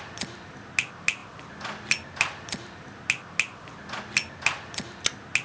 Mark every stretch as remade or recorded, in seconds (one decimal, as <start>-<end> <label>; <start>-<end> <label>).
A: 0.0-5.4 recorded